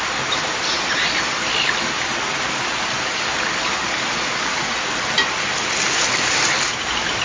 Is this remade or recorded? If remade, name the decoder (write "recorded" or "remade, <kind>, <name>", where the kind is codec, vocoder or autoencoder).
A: recorded